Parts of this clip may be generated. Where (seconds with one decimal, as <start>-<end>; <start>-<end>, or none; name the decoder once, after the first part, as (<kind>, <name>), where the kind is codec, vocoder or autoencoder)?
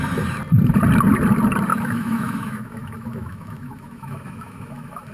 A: 1.7-5.1 (autoencoder, DAC-VAE)